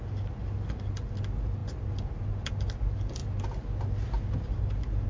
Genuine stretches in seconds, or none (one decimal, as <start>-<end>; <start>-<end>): 0.0-5.1